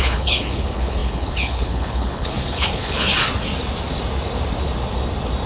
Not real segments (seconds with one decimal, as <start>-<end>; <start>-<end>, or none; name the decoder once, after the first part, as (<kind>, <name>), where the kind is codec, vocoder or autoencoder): 0.0-3.1 (codec, HILCodec)